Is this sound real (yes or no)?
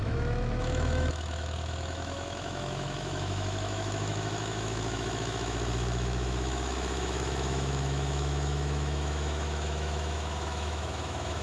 no